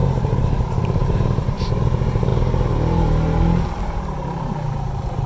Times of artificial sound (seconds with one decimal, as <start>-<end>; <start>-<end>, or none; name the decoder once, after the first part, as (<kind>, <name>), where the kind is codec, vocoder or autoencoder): 1.0-1.8 (vocoder, BigVGAN v2)